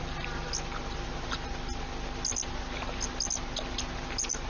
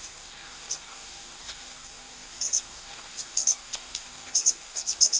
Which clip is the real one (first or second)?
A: first